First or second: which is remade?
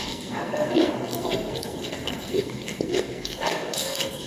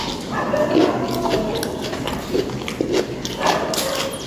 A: first